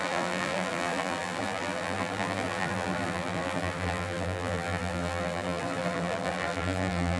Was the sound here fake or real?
fake